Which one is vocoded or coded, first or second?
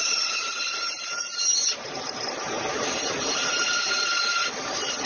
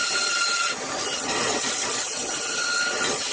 first